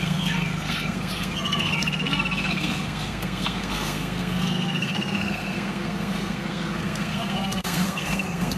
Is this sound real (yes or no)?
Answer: no